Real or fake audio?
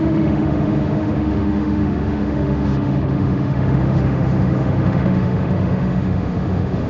fake